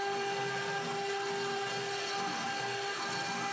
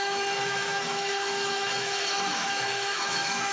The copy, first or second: second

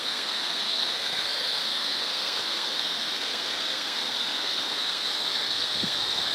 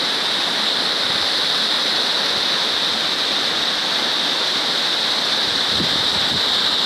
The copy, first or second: first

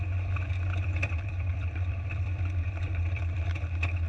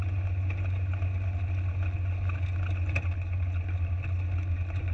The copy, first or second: first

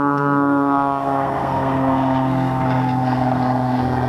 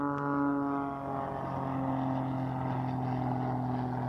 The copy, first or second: first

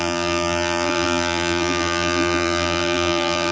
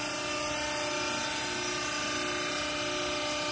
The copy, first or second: first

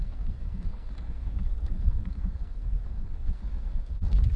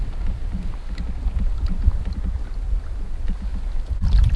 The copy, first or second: first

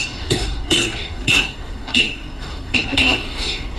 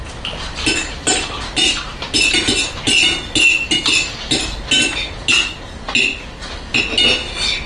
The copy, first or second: first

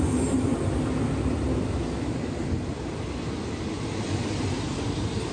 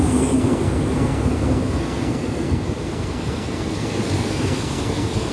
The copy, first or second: second